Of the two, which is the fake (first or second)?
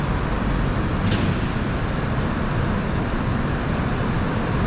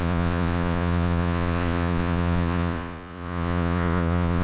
second